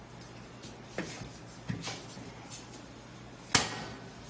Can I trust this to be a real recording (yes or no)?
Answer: yes